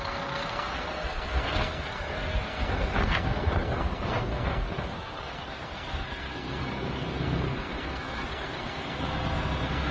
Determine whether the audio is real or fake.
fake